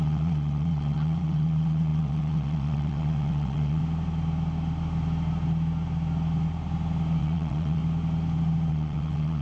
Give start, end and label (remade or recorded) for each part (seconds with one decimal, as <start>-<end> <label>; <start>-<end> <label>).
0.0-3.8 remade; 3.8-7.2 recorded; 7.2-7.8 remade; 7.8-8.7 recorded; 8.7-9.4 remade